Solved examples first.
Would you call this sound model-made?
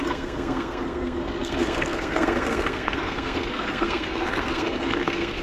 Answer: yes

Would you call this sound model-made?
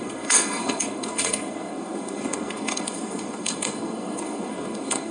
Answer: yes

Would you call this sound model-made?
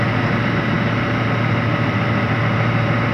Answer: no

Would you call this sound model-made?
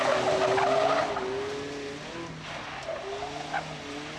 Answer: no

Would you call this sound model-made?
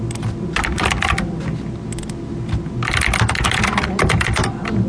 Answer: no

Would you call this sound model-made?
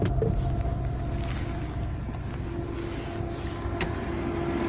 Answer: no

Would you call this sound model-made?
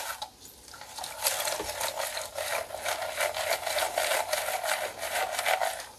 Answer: no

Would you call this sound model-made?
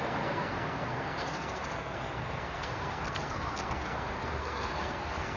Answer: yes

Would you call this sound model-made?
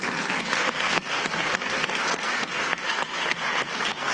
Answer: yes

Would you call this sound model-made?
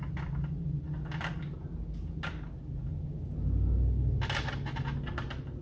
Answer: no